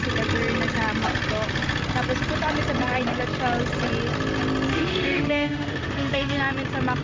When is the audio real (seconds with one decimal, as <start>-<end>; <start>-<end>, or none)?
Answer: 0.0-4.7; 6.4-7.0